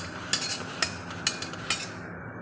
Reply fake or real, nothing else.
real